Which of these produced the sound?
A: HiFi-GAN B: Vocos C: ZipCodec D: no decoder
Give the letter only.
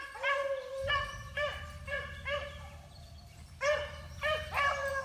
D